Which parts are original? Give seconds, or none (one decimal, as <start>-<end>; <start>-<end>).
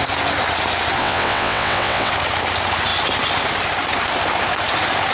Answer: 0.0-1.0; 2.1-5.1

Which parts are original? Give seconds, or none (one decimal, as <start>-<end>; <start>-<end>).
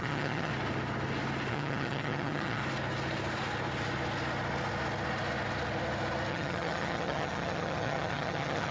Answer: 0.5-1.5; 2.6-6.3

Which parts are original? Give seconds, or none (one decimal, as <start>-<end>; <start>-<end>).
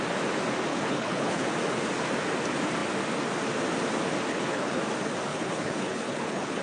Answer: 0.0-0.7; 1.5-4.3; 4.8-5.3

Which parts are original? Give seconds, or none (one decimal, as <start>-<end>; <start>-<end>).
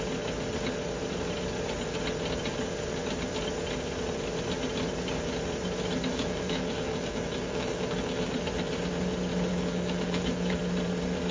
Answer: 0.0-6.1; 8.3-9.5; 10.6-11.3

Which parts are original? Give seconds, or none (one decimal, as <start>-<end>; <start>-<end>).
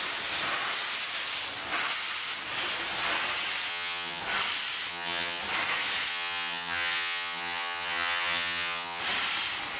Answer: 0.0-3.7; 4.2-4.9; 5.4-6.1; 9.0-9.8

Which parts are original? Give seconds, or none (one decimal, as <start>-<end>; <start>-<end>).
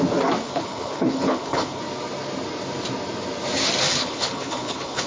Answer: 0.0-0.4; 1.8-4.0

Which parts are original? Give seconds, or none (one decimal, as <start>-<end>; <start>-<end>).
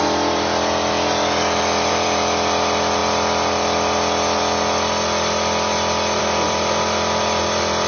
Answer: 3.0-6.2